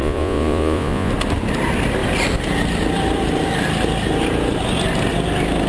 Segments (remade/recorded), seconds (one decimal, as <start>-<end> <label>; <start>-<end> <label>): 0.0-1.1 remade; 1.1-5.7 recorded

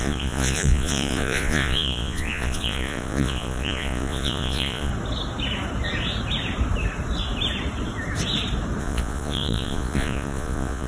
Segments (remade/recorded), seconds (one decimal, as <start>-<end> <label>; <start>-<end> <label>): 0.0-4.9 remade; 4.9-8.8 recorded; 8.8-10.9 remade